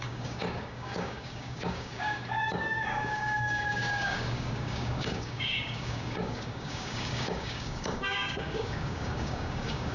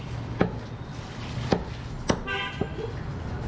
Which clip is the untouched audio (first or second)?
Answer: second